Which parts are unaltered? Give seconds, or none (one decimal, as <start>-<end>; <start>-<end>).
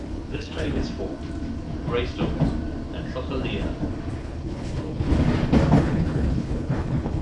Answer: 0.8-4.2; 5.1-5.8